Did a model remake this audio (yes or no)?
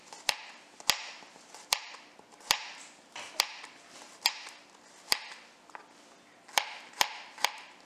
no